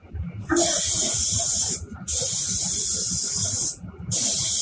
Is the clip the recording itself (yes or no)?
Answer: yes